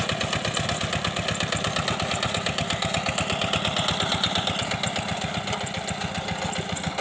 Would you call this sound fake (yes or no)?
no